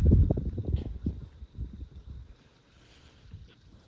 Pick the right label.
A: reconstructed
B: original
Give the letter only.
B